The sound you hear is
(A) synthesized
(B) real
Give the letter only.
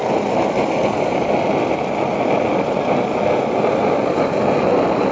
B